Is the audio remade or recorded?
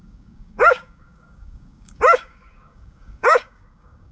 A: remade